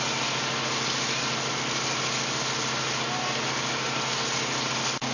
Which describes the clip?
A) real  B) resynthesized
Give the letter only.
A